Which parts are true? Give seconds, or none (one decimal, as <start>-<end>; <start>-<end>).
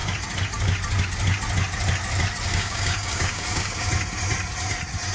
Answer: 0.0-2.5; 3.9-5.1